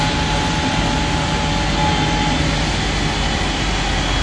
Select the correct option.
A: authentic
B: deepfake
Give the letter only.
A